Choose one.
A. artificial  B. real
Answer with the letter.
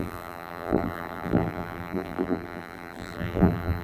A